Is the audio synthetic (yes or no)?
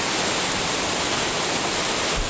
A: no